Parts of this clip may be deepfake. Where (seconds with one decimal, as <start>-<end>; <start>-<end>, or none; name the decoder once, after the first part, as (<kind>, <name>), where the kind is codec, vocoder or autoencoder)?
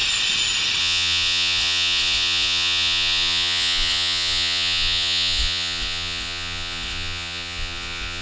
0.8-8.2 (vocoder, Vocos)